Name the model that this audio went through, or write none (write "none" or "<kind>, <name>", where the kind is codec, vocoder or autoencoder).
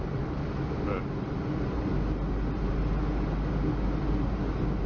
none